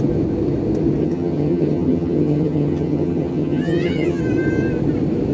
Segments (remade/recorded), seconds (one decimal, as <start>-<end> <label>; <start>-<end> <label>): 0.0-1.0 recorded; 1.0-4.2 remade; 4.2-5.3 recorded